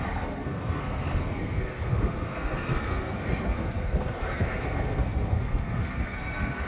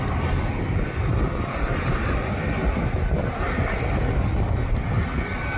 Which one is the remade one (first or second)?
first